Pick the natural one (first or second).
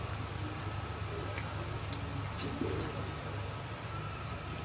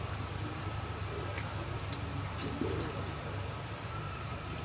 first